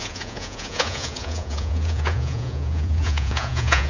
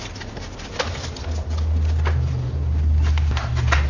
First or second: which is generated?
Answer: first